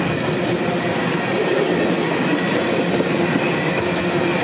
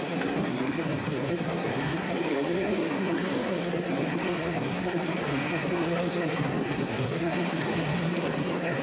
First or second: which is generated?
second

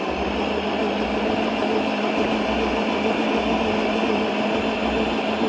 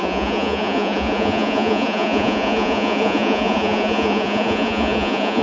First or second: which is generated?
second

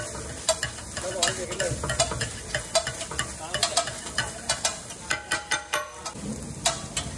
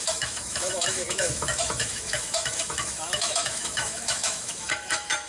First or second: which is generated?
second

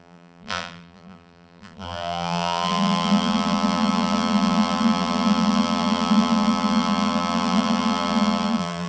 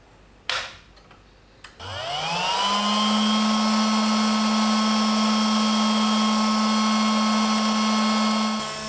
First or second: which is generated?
first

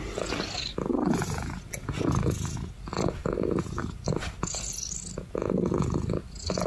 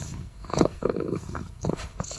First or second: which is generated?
second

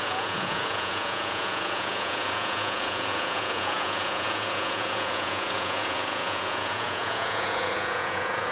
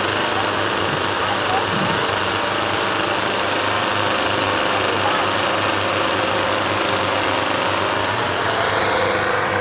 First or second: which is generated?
first